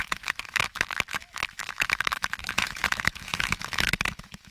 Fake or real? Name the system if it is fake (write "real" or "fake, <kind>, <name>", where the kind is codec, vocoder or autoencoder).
fake, autoencoder, DAC-VAE